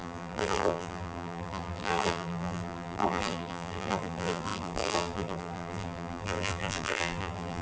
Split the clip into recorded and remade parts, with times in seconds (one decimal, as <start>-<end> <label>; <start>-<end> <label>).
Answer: 0.0-7.6 remade